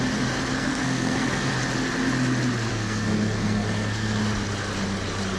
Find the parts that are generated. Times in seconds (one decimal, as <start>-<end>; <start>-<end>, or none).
0.5-1.5; 2.7-4.2